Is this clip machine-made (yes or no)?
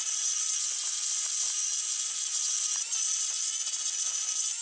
no